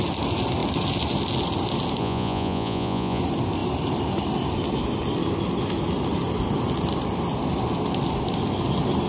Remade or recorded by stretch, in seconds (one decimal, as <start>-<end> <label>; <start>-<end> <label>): 0.0-2.0 recorded; 2.0-3.2 remade; 3.2-9.1 recorded